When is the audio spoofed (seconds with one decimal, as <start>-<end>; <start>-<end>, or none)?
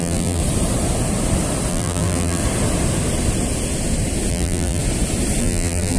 0.0-0.4; 1.7-2.4; 4.3-4.8; 5.4-6.0